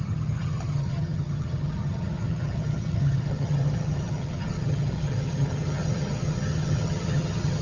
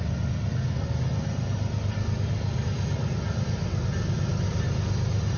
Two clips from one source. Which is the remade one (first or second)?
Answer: first